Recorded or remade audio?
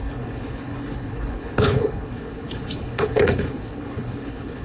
remade